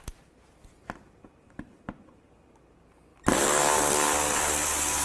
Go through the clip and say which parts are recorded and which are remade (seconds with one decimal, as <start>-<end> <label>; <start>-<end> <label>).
0.0-3.1 recorded; 3.1-5.0 remade